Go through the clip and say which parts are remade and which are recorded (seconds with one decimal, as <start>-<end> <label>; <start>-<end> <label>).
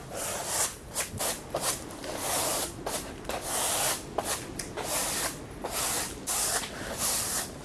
0.0-7.6 recorded